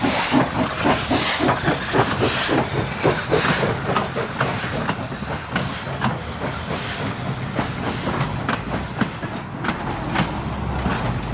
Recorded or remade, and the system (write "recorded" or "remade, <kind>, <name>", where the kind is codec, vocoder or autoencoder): recorded